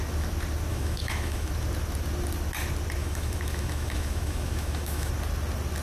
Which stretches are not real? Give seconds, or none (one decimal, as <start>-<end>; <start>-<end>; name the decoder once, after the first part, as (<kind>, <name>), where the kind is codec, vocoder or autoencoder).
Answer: 0.7-1.5 (autoencoder, DAC-VAE); 3.0-5.1